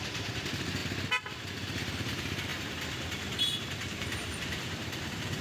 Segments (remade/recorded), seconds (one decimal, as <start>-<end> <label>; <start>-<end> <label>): 0.0-0.8 remade; 0.8-1.4 recorded; 1.4-2.5 remade; 2.5-3.7 recorded; 3.7-5.4 remade